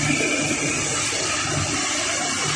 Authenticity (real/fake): real